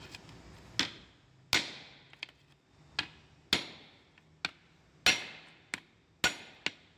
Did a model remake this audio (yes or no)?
no